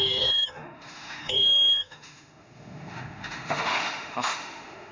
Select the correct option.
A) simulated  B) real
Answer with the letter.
A